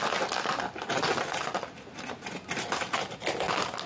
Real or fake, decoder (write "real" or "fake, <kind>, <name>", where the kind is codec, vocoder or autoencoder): real